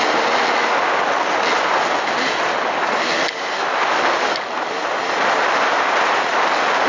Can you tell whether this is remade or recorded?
recorded